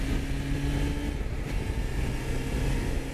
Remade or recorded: recorded